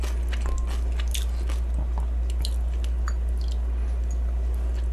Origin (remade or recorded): recorded